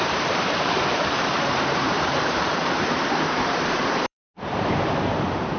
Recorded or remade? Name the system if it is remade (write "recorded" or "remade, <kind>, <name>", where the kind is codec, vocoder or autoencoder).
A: remade, vocoder, BigVGAN v2